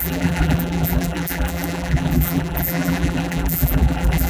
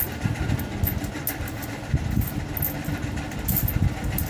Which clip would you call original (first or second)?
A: second